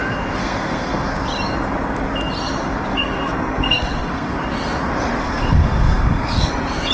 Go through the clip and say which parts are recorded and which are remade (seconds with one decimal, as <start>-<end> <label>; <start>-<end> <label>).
0.0-0.4 recorded; 0.4-1.1 remade; 1.1-2.9 recorded; 2.9-4.3 remade; 4.3-5.2 recorded; 5.2-6.5 remade; 6.5-6.9 recorded